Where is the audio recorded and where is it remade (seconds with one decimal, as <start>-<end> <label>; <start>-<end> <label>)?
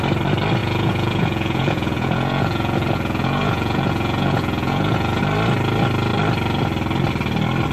0.0-0.6 recorded; 0.6-5.2 remade; 5.2-7.7 recorded